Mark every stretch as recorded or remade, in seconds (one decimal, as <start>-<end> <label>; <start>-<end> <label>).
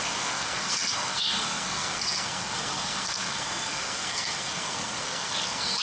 0.0-5.8 remade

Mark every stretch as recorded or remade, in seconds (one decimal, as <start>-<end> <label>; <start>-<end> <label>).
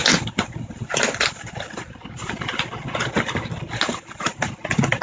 0.0-5.0 recorded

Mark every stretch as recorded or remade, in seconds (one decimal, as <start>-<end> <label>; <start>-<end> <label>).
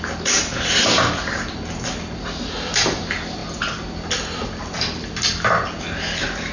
0.0-6.5 recorded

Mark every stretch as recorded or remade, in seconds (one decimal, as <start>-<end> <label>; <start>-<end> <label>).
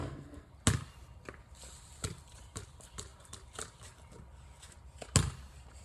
0.0-0.5 remade; 0.5-5.8 recorded